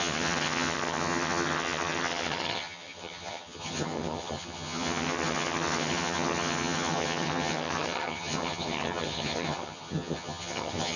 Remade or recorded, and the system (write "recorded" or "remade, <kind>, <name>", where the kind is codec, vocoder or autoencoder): remade, vocoder, HiFi-GAN